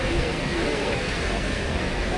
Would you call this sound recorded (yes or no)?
no